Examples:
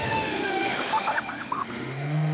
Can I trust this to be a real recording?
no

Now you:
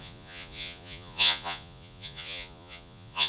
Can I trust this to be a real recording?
no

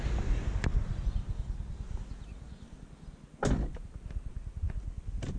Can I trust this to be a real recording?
yes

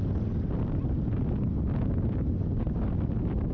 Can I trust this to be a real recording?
yes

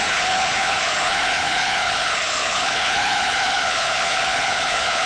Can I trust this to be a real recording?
no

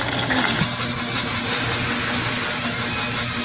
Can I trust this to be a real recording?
yes